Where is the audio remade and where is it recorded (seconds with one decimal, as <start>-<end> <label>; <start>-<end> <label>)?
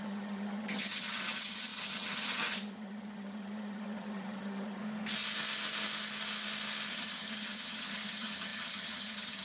0.0-4.8 remade; 4.8-6.9 recorded; 6.9-9.4 remade